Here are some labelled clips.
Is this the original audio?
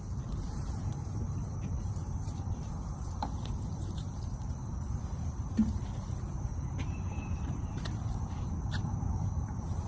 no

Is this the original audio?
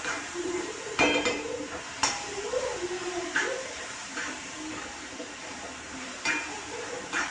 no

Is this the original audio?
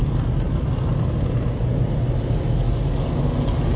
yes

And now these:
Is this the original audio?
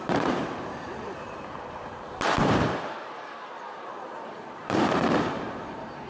no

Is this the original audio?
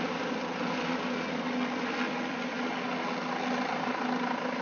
yes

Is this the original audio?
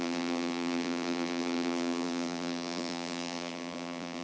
no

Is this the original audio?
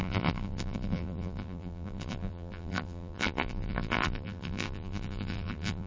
no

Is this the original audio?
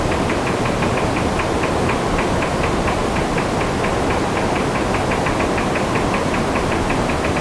no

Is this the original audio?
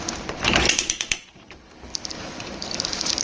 no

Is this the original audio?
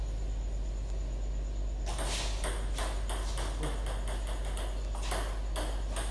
yes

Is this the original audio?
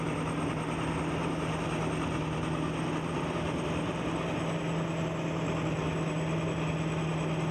yes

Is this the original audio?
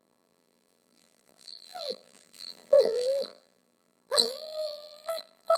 no